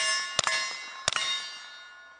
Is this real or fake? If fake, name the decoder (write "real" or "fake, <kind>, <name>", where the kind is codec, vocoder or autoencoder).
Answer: real